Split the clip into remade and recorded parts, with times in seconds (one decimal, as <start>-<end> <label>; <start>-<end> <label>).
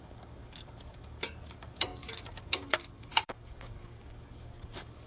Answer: 0.0-5.1 remade